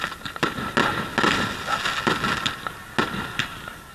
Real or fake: real